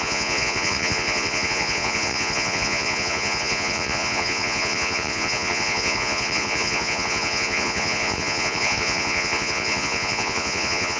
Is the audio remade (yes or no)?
yes